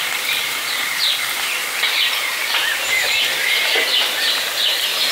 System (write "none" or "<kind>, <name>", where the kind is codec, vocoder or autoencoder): vocoder, BigVGAN v2